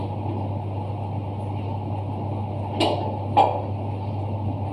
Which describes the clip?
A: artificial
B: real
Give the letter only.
B